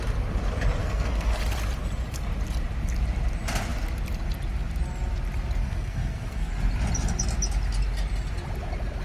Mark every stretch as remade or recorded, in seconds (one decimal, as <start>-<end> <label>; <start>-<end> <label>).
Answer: 0.0-0.8 recorded; 0.8-1.4 remade; 1.4-5.6 recorded; 5.6-6.5 remade; 6.5-9.0 recorded